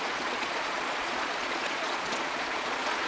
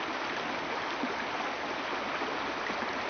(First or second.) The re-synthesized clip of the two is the first